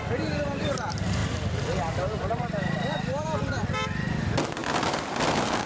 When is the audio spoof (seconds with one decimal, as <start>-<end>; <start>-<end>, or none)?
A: none